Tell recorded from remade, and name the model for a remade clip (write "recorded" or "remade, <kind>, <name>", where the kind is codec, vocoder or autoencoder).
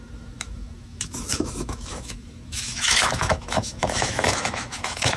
remade, autoencoder, DAC-VAE